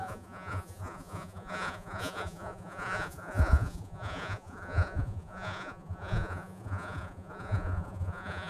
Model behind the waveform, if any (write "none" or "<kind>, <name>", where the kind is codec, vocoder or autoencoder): vocoder, Vocos